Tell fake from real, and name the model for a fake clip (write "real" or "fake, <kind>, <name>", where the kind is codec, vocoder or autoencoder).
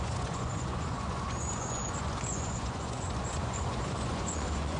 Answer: fake, vocoder, Vocos